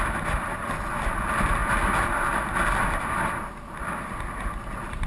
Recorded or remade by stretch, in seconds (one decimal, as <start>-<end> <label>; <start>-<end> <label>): 0.0-5.1 recorded